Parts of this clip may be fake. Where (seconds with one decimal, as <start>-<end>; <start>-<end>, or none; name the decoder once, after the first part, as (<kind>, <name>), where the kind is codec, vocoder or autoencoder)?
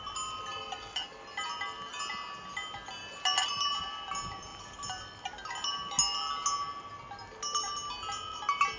none